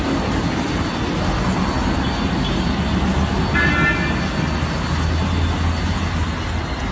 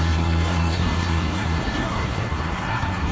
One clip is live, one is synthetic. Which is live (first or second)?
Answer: first